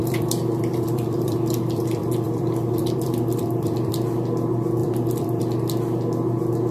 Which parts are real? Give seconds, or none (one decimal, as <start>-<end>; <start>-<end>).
3.9-4.8; 5.4-6.7